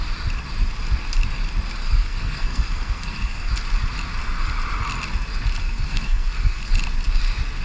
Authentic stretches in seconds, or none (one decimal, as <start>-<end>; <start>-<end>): 0.0-1.8; 3.5-5.6; 6.6-7.6